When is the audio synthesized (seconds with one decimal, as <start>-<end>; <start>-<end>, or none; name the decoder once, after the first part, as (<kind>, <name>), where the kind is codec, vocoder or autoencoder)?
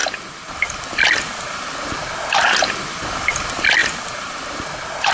none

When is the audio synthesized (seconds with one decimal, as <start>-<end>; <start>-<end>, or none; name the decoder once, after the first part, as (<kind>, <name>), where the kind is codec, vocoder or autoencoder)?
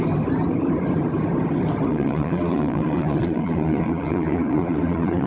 1.9-5.3 (vocoder, Vocos)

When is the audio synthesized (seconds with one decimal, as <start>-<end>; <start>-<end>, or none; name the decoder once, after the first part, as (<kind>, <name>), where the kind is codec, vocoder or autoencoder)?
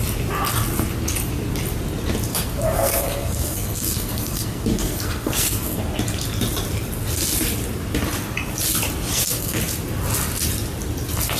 2.3-5.8 (codec, SNAC); 9.1-9.6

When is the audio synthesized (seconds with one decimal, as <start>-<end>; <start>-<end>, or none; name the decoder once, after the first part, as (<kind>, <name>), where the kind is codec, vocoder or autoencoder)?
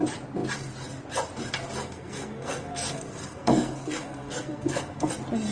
1.8-5.1 (codec, SNAC)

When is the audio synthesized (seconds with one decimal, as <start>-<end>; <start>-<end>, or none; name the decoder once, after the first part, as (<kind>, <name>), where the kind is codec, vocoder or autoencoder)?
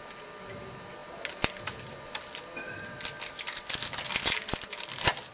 none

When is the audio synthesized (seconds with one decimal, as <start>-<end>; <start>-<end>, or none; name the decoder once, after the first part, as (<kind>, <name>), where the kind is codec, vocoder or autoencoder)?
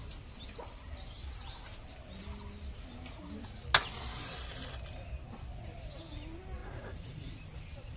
6.6-7.3 (vocoder, Vocos)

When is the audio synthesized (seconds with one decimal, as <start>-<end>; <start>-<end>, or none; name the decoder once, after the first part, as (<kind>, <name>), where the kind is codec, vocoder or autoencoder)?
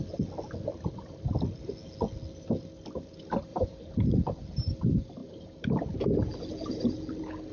3.5-4.1 (vocoder, BigVGAN v2)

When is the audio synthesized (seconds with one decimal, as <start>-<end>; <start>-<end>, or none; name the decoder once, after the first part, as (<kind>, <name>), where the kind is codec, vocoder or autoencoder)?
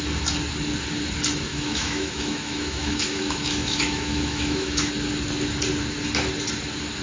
1.5-4.9 (autoencoder, DAC-VAE)